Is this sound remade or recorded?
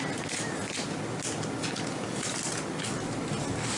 recorded